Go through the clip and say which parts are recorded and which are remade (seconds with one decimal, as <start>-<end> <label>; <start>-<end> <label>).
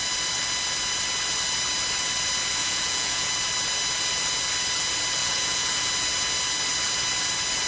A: 0.0-2.6 recorded; 2.6-3.3 remade; 3.3-5.2 recorded; 5.2-5.9 remade; 5.9-7.7 recorded